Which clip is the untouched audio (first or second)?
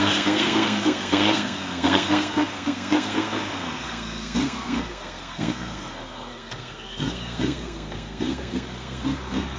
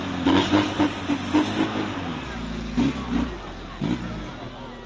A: second